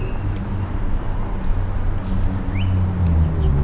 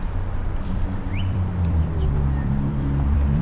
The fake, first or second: second